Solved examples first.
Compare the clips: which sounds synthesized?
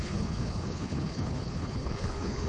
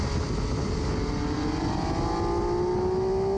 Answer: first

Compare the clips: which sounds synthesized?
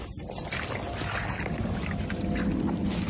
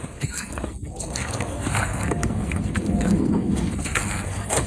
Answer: second